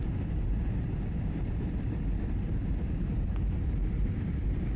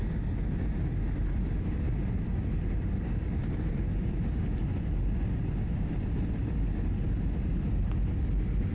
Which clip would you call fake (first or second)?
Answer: first